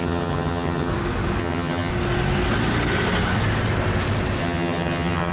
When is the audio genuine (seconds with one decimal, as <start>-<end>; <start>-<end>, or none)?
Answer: 0.9-1.4; 1.9-4.4